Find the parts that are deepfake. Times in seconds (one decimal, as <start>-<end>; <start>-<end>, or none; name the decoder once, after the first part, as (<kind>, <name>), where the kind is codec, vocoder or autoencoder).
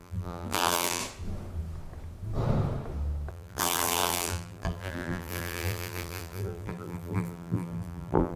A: 0.0-1.0 (vocoder, BigVGAN v2); 3.3-8.4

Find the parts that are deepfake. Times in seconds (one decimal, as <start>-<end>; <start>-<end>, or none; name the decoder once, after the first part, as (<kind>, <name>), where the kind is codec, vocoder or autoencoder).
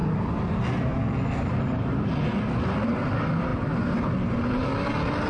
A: 0.5-0.9 (vocoder, BigVGAN v2); 1.9-3.5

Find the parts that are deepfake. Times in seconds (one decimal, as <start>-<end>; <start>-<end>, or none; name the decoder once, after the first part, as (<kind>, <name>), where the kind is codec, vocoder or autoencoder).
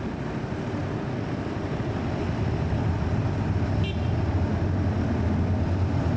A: 0.8-4.5 (vocoder, BigVGAN v2)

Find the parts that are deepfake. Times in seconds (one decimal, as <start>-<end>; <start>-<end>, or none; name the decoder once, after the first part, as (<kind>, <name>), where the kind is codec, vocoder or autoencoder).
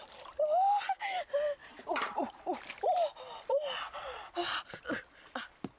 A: 1.6-2.3 (vocoder, BigVGAN v2)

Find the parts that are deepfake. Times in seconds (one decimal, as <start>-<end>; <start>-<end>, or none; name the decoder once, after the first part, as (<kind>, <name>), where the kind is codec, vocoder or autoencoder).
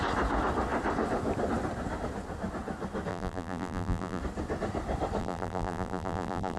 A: 3.1-4.2 (vocoder, BigVGAN v2); 5.2-6.6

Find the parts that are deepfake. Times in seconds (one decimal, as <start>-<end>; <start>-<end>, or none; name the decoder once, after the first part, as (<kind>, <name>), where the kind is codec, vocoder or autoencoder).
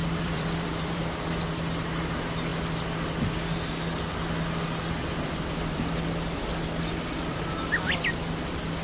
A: 0.0-1.0 (vocoder, BigVGAN v2)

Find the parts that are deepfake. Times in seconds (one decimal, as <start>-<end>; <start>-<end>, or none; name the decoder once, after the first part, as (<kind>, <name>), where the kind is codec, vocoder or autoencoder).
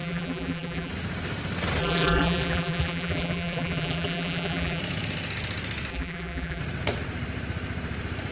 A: 0.0-0.9 (vocoder, BigVGAN v2); 1.8-4.8; 5.9-6.6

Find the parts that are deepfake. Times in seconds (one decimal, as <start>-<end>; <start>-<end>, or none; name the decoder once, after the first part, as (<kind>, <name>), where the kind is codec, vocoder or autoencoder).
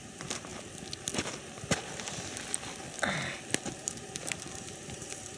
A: 0.0-0.5 (vocoder, BigVGAN v2); 3.7-5.4